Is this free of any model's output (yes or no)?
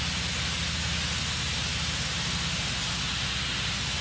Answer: yes